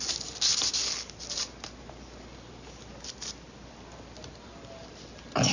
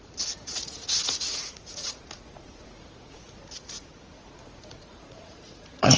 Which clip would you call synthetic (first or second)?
second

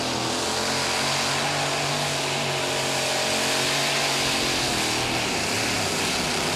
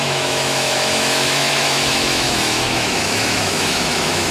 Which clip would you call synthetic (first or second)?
second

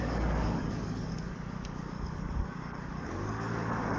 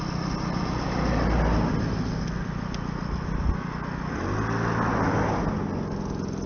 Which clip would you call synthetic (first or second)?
first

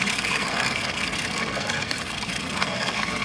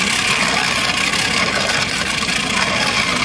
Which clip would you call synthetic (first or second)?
first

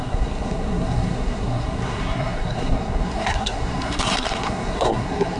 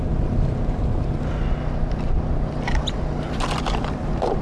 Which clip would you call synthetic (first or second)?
first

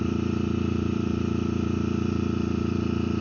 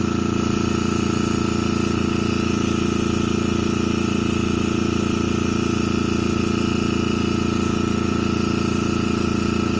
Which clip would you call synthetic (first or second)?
first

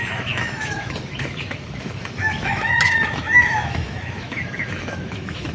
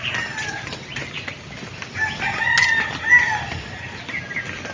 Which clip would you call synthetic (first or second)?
first